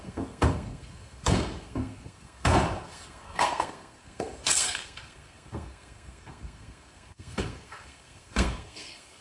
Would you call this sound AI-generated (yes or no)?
yes